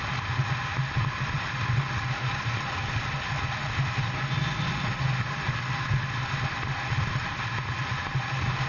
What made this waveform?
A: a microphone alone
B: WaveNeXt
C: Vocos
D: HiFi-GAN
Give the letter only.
A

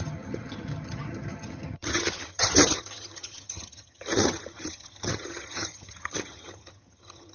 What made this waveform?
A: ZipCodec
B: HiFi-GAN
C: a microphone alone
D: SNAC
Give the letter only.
B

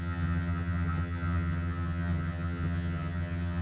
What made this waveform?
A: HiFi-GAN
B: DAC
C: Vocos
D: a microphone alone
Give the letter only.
A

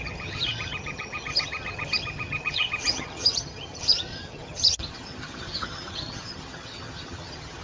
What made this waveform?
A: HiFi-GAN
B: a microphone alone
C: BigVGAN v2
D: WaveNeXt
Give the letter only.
A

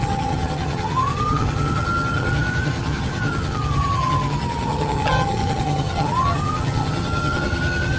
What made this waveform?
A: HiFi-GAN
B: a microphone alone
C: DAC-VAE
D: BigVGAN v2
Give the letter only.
A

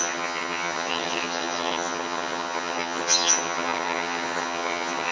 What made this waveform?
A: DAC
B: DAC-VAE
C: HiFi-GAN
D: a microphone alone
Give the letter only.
C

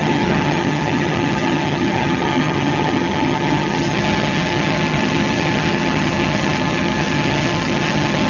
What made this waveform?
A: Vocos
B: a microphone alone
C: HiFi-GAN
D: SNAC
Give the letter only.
C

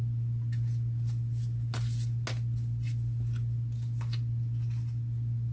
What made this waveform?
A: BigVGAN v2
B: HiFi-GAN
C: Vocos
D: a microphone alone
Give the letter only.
D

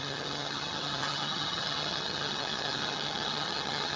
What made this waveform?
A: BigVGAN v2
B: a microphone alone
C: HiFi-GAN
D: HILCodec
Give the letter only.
C